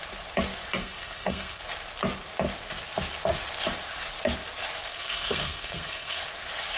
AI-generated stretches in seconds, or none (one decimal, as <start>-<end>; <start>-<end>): 0.8-1.6; 4.9-6.2